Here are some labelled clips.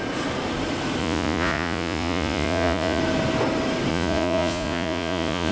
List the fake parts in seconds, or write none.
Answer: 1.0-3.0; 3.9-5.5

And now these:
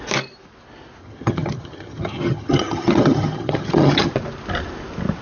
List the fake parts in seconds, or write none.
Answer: 1.0-4.1

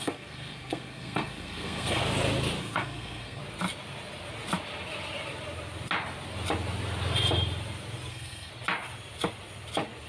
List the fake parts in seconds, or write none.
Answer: 0.0-2.0; 2.6-3.4; 8.1-8.5

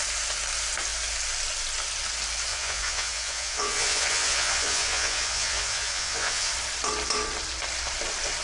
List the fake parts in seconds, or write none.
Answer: 2.5-6.5

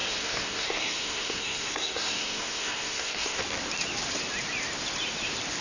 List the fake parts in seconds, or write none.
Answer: 0.0-3.4